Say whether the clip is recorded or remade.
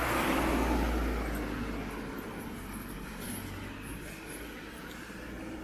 recorded